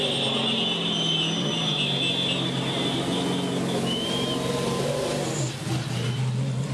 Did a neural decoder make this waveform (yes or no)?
no